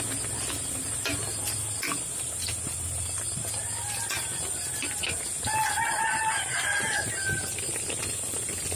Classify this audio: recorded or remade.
recorded